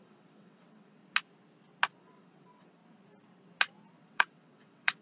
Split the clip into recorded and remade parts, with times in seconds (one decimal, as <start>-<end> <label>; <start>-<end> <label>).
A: 0.0-1.0 remade; 1.0-2.0 recorded; 2.0-2.8 remade; 2.8-4.0 recorded; 4.0-5.0 remade